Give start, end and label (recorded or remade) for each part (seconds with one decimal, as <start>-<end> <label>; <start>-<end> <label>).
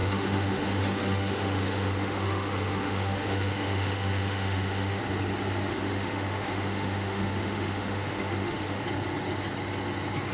0.0-5.0 remade; 5.0-5.7 recorded; 5.7-8.8 remade; 8.8-10.3 recorded